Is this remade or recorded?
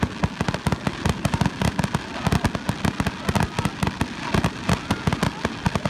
recorded